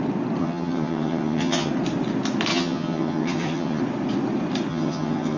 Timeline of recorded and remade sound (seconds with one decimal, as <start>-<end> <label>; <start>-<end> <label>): 0.0-0.4 recorded; 0.4-1.7 remade; 1.7-2.5 recorded; 2.5-3.8 remade; 3.8-4.7 recorded; 4.7-5.4 remade